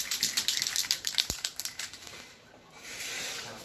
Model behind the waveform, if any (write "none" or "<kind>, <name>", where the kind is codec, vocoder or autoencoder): vocoder, BigVGAN v2